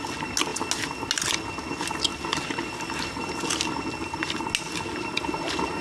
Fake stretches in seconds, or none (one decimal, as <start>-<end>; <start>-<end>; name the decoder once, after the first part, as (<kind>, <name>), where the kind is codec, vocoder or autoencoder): none